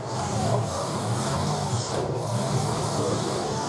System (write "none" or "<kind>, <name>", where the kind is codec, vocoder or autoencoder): codec, DAC